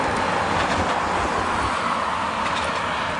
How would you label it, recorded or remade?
recorded